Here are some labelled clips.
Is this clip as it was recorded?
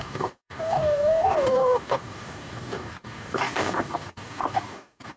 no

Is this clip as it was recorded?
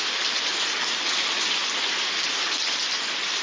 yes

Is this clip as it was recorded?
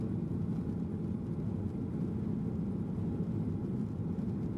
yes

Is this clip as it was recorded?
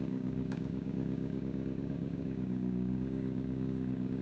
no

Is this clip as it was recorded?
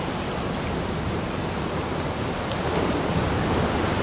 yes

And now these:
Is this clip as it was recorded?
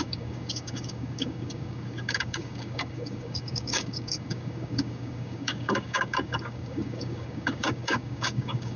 no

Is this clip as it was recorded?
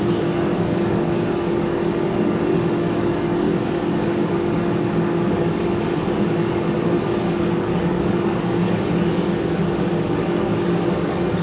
no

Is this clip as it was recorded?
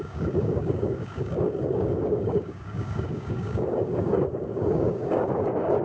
no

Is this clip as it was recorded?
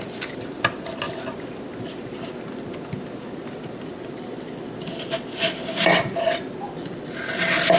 yes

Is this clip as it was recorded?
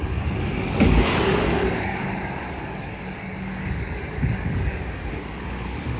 no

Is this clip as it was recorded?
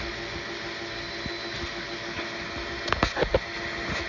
yes